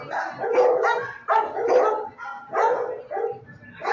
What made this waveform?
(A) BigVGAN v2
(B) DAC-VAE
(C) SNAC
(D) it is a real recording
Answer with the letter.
D